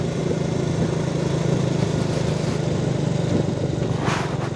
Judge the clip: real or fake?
real